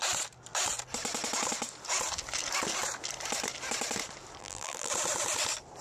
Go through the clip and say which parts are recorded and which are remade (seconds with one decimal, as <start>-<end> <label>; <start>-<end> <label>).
0.0-4.4 recorded; 4.4-4.9 remade; 4.9-5.8 recorded

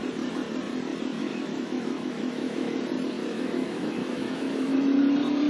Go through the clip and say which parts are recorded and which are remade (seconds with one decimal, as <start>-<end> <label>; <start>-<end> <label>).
0.0-1.2 recorded; 1.2-2.8 remade; 2.8-3.3 recorded; 3.3-5.0 remade; 5.0-5.5 recorded

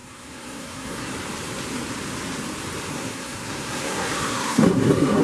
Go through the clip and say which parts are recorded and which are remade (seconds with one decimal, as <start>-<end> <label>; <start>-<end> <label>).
0.0-1.1 remade; 1.1-2.9 recorded; 2.9-5.2 remade

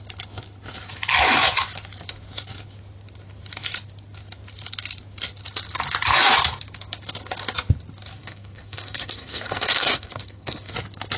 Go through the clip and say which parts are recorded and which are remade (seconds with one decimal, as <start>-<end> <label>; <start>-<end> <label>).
0.0-8.2 recorded; 8.2-10.7 remade; 10.7-11.2 recorded